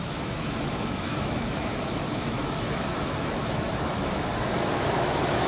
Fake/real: fake